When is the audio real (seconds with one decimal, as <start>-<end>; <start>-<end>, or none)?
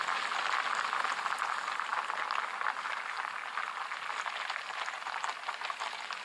0.0-6.2